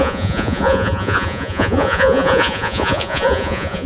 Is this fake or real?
fake